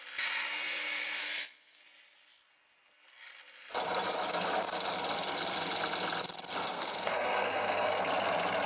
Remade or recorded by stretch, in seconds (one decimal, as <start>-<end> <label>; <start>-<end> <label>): 0.0-1.2 recorded; 1.2-1.8 remade; 1.8-6.7 recorded; 6.7-8.0 remade; 8.0-8.7 recorded